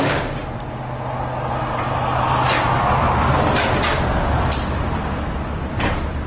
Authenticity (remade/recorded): recorded